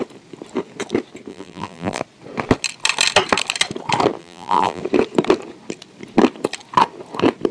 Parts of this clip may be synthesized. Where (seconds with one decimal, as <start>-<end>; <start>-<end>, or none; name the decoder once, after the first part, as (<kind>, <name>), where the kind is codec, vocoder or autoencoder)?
1.3-2.0 (vocoder, BigVGAN v2); 4.2-4.8